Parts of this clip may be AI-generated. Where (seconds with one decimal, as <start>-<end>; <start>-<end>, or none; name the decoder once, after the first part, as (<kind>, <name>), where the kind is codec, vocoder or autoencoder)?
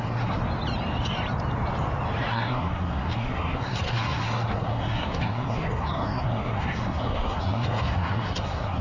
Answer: 0.0-0.4 (codec, SNAC); 2.3-8.8